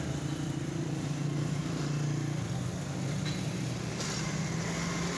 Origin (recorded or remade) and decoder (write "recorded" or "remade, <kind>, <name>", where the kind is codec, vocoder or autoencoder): recorded